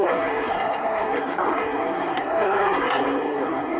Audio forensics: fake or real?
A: fake